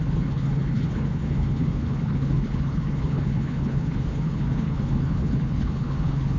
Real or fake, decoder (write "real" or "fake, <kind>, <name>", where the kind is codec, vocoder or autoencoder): fake, codec, HILCodec